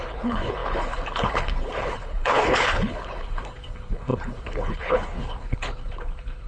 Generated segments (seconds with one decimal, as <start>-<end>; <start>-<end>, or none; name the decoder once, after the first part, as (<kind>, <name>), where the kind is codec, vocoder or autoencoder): 0.0-6.5 (codec, HILCodec)